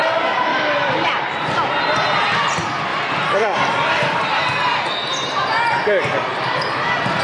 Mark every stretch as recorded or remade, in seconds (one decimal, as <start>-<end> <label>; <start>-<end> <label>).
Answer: 0.0-0.5 recorded; 0.5-1.7 remade; 1.7-2.9 recorded; 2.9-4.4 remade; 4.4-6.3 recorded; 6.3-7.2 remade